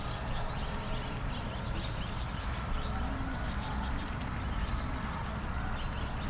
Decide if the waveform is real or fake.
real